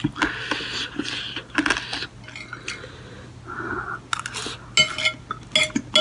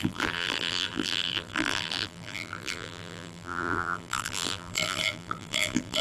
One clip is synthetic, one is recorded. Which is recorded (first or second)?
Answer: first